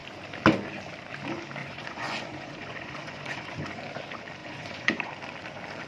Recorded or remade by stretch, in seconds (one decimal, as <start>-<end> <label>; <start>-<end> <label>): 0.0-1.6 recorded; 1.6-3.8 remade; 3.8-4.4 recorded; 4.4-5.1 remade; 5.1-5.9 recorded